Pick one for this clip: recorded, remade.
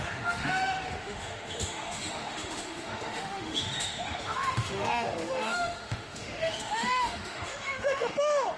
remade